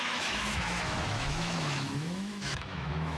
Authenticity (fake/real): fake